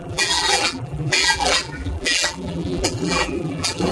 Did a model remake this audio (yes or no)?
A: yes